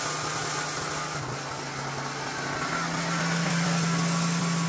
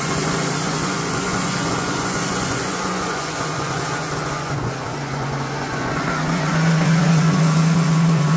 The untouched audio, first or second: first